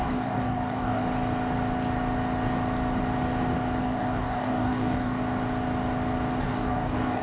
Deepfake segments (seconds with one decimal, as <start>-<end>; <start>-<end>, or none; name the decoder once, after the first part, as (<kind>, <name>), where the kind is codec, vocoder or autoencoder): 0.0-1.0 (codec, DAC); 3.8-5.2; 6.4-7.2